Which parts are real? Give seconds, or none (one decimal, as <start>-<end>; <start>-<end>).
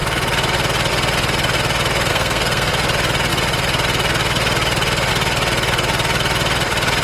0.0-2.1; 2.7-7.0